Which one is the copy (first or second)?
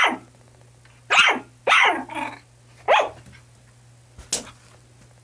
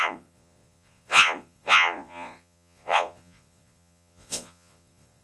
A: second